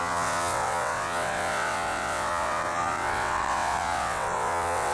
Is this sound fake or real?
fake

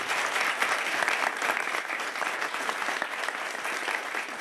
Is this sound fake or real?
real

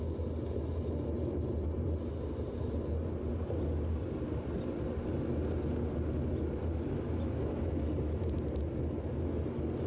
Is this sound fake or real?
real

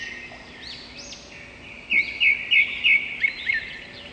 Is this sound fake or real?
real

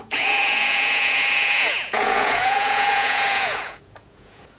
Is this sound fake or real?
fake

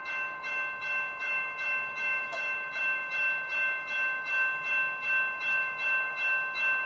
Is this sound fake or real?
fake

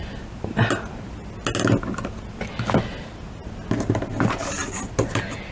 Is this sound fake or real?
real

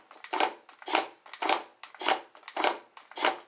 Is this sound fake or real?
real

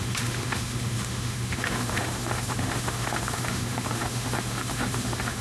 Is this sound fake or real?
fake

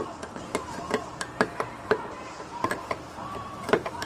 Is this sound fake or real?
fake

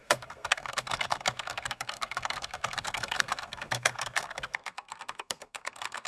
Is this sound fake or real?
fake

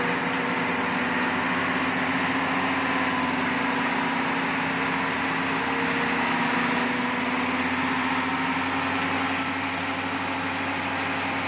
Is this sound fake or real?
real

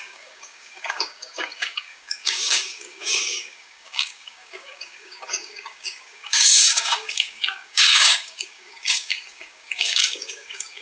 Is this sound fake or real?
fake